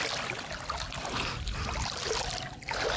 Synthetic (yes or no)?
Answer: no